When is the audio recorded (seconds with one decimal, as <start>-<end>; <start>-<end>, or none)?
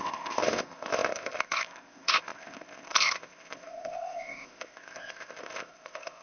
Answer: none